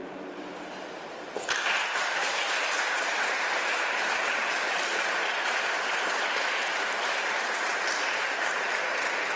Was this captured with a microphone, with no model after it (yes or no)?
no